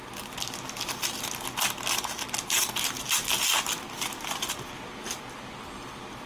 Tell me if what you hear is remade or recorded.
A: recorded